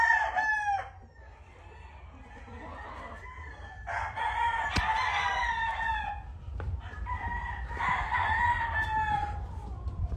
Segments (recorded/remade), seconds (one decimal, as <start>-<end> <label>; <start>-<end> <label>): 0.0-10.2 recorded